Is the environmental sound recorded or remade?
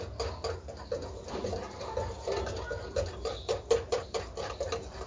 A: recorded